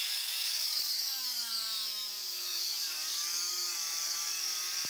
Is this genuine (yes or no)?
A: no